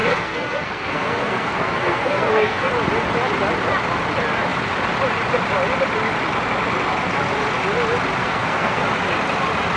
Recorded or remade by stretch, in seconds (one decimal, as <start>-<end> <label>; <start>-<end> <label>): 0.0-2.7 remade; 2.7-8.2 recorded; 8.2-8.8 remade; 8.8-9.8 recorded